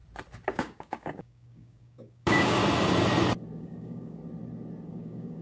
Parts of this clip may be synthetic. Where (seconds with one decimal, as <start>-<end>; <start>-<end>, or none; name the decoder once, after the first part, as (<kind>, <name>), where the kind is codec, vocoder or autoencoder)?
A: 0.6-2.6 (codec, DAC); 3.6-4.2; 4.9-5.4